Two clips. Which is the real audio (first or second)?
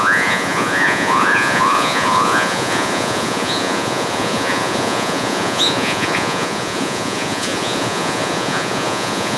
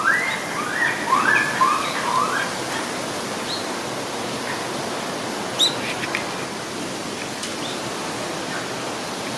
second